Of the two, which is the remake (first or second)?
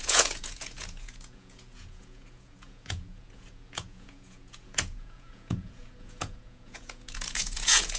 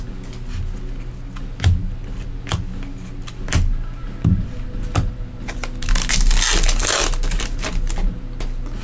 first